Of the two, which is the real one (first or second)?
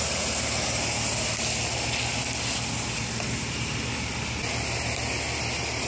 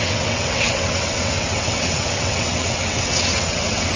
first